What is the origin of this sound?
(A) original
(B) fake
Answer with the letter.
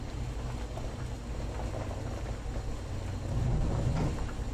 A